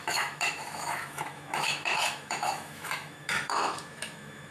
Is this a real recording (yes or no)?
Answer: no